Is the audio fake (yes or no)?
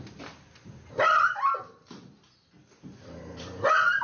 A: no